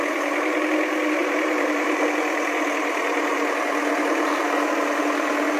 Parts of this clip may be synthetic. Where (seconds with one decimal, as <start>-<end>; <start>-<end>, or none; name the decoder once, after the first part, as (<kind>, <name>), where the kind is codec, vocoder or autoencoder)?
1.2-2.0 (vocoder, BigVGAN v2)